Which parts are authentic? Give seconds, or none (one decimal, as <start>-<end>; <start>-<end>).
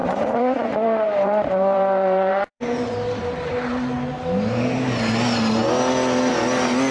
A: 4.1-6.9